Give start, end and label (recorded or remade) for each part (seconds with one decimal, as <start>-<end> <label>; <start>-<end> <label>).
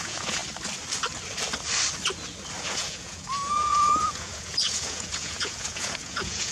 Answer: 0.0-0.4 remade; 0.4-2.6 recorded; 2.6-6.5 remade